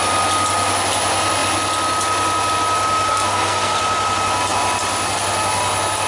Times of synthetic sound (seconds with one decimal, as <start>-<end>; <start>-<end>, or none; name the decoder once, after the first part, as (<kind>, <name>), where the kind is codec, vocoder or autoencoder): 3.1-3.8 (codec, SNAC)